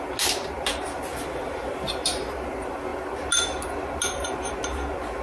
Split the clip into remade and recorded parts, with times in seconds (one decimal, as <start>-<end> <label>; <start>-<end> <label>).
0.0-5.2 recorded